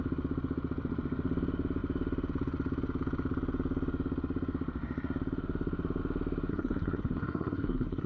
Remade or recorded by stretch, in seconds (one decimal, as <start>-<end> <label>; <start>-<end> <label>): 0.0-6.5 recorded; 6.5-8.1 remade